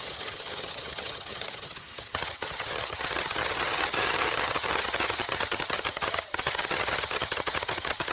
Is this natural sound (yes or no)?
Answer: no